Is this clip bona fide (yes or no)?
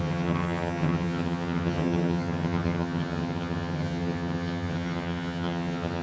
no